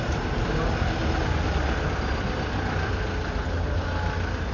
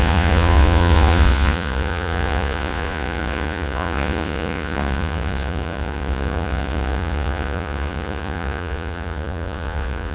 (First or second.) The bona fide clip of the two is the first